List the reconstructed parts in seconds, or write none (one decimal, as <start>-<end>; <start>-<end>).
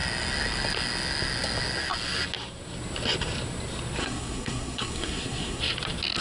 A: 4.0-5.6